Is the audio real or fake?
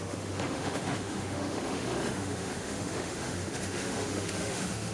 fake